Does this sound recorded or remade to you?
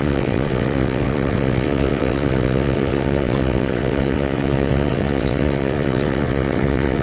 remade